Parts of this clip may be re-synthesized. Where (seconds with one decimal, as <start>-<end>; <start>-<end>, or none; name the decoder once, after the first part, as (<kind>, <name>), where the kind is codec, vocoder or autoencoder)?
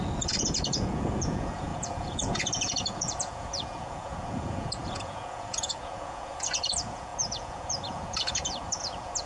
0.0-9.3 (vocoder, Vocos)